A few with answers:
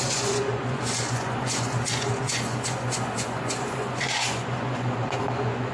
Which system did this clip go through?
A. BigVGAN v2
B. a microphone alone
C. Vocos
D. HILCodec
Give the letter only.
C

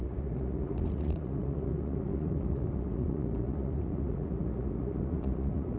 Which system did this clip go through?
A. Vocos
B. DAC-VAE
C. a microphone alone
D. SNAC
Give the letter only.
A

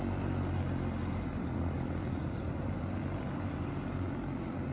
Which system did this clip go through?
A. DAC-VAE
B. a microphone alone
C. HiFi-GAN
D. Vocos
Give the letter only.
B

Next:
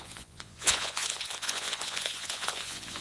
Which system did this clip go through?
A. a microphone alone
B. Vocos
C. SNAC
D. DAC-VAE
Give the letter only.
B